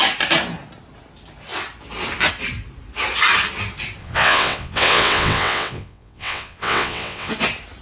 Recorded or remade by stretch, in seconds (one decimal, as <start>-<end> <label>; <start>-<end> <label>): 0.0-4.0 recorded; 4.0-7.3 remade; 7.3-7.8 recorded